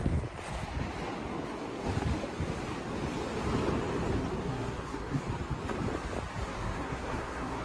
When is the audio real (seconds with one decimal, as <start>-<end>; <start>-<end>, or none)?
0.0-4.4; 5.2-6.4